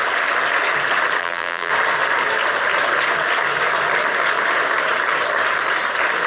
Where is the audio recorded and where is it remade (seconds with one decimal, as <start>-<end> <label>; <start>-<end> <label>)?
0.0-1.2 recorded; 1.2-1.7 remade; 1.7-6.3 recorded